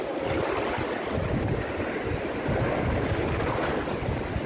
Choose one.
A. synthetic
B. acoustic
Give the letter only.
B